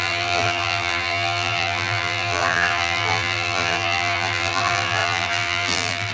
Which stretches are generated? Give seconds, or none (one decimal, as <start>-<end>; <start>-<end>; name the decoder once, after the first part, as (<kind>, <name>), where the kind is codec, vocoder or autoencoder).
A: 0.0-6.1 (vocoder, BigVGAN v2)